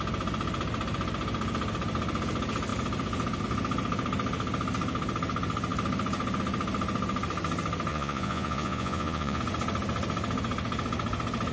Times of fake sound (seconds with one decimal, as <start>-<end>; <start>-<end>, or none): 7.9-9.4